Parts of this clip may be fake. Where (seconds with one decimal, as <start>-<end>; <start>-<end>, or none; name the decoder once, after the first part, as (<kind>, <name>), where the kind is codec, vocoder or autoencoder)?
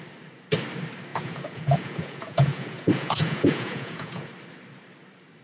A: 1.1-4.3 (vocoder, Vocos)